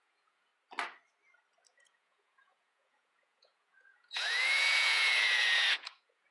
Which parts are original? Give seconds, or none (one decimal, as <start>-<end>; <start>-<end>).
0.5-1.7